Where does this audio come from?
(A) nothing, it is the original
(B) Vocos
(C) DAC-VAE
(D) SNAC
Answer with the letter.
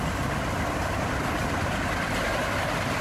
A